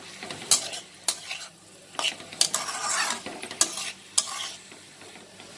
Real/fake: real